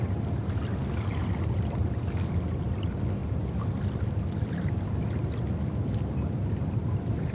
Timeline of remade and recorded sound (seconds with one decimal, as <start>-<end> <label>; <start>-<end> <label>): 0.0-7.3 recorded